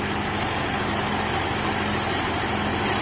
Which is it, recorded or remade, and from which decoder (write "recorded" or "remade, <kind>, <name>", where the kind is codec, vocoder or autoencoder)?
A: recorded